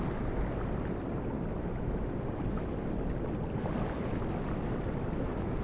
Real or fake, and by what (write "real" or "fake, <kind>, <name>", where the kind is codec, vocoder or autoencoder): real